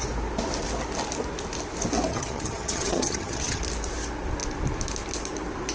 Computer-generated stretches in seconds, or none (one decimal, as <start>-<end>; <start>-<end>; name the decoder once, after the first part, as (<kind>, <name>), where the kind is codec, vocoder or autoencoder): 2.1-3.6 (vocoder, HiFi-GAN)